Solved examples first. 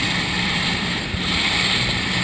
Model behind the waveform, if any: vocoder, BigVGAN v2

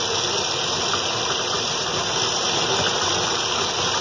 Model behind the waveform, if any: none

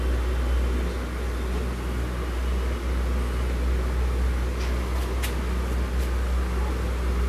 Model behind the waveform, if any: none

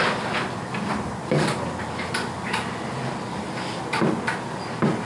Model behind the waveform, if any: none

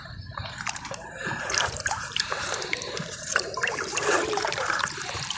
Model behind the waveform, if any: vocoder, BigVGAN v2